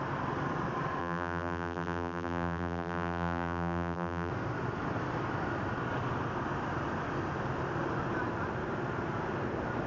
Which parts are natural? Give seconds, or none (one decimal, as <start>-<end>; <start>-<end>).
0.0-1.0; 4.3-9.9

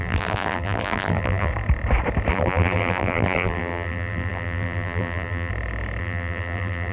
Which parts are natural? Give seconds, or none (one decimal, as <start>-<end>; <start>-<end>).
1.5-2.3; 5.5-6.0

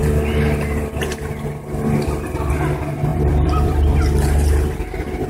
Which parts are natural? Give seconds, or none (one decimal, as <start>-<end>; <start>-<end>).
0.0-3.1; 4.0-5.3

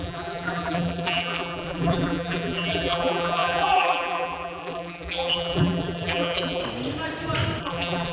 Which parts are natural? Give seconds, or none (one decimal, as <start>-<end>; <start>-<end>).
6.6-7.6